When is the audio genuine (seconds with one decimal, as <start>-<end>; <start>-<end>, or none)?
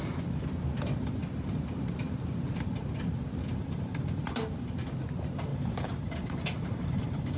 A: 0.0-3.5; 4.2-5.5